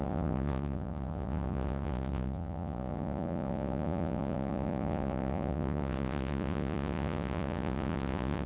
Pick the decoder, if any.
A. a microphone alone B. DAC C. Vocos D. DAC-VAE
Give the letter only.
C